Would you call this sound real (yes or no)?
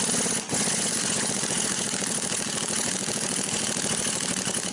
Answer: no